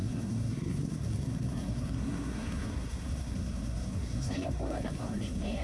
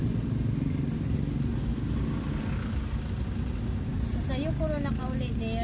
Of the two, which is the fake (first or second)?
first